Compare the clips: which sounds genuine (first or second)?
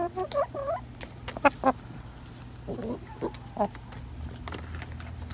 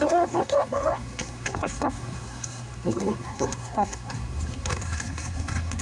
first